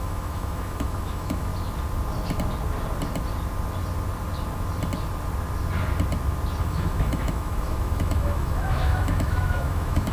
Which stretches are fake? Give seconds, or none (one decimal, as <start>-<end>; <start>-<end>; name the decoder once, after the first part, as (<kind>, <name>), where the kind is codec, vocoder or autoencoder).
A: 0.0-1.5 (autoencoder, DAC-VAE); 6.6-10.1